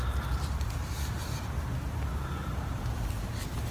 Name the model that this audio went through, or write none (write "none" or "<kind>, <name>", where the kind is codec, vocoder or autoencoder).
vocoder, BigVGAN v2